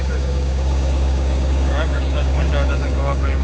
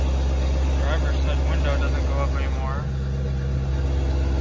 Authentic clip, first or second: second